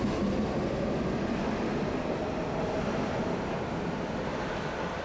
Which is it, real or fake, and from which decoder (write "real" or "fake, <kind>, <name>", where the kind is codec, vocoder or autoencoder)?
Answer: real